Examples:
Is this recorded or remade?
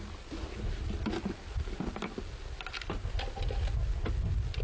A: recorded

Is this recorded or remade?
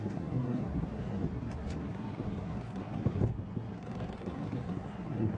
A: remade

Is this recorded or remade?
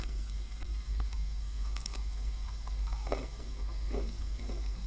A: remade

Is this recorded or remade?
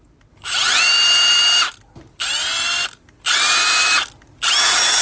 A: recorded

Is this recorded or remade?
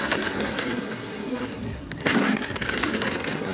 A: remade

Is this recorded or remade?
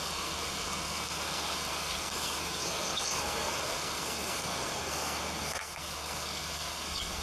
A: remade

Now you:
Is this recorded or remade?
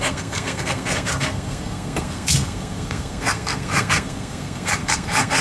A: remade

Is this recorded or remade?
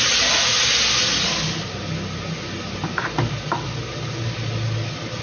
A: recorded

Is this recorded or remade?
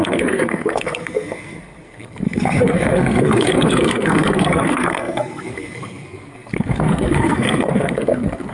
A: remade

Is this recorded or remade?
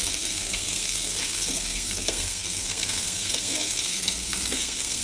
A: remade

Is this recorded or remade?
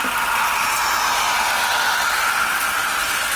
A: recorded